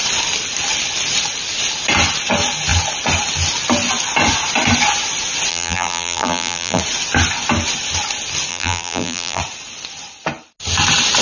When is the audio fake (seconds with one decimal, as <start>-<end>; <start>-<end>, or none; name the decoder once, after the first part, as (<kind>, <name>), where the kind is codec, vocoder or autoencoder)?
5.5-6.8 (vocoder, BigVGAN v2); 8.5-9.4